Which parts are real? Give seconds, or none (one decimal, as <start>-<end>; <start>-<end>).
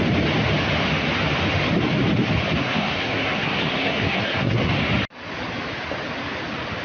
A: 0.0-2.6; 4.7-6.8